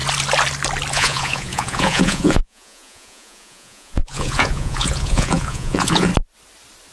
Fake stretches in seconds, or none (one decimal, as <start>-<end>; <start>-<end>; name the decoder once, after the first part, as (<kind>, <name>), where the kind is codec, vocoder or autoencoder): 0.9-6.1 (vocoder, Vocos)